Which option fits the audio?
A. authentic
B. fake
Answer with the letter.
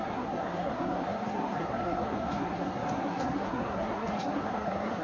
B